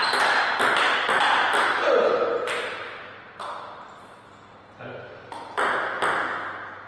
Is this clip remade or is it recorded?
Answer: recorded